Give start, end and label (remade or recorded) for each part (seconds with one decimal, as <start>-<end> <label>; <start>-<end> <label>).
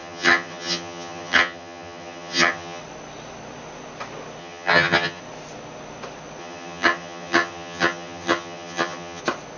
0.0-2.8 remade; 2.8-4.4 recorded; 4.4-5.2 remade; 5.2-6.4 recorded; 6.4-9.2 remade; 9.2-9.6 recorded